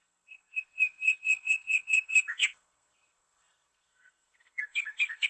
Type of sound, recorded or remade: remade